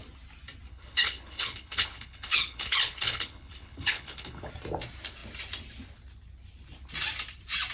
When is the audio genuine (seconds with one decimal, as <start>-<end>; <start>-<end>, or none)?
0.0-0.7; 4.5-7.7